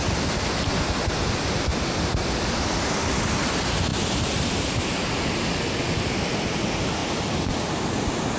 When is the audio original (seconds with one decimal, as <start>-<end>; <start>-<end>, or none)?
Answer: 0.0-8.4